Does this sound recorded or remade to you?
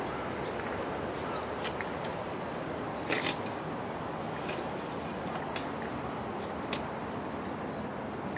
recorded